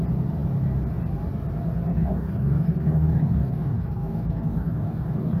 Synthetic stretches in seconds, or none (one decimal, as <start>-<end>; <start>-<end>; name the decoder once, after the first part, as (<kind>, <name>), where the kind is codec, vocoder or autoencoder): 1.9-5.4 (codec, DAC)